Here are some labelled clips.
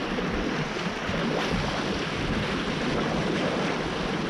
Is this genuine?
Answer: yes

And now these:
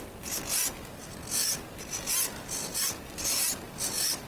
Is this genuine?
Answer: yes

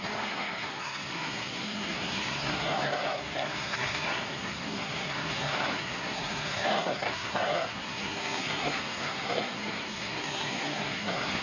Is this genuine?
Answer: no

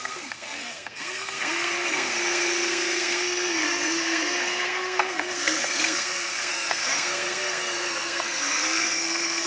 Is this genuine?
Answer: no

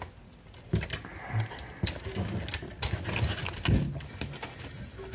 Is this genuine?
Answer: yes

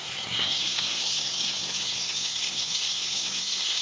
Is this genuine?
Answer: no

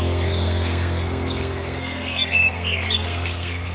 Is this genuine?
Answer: no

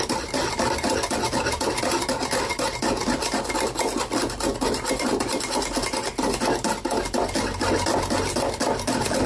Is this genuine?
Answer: yes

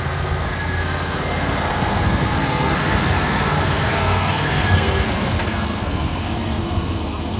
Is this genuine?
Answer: no